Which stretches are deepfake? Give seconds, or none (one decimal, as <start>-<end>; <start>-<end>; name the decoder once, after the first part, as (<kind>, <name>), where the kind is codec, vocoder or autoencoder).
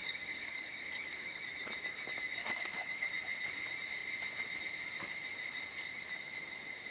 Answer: 0.0-1.4 (codec, DAC); 2.4-3.1